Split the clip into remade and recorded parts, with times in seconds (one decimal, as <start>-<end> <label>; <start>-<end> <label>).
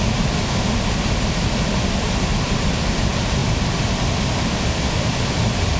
0.0-2.3 recorded; 2.3-3.0 remade; 3.0-5.8 recorded